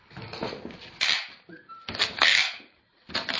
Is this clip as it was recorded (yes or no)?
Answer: yes